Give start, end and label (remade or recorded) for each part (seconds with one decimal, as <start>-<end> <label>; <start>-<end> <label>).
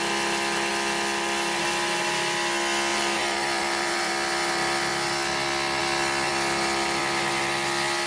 0.0-2.9 recorded; 2.9-4.1 remade; 4.1-8.1 recorded